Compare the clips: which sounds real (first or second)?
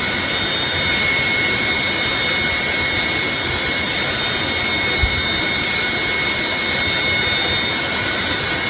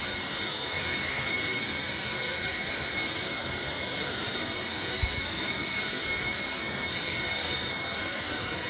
first